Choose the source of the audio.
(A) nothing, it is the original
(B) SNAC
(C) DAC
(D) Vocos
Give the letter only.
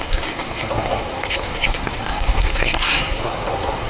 B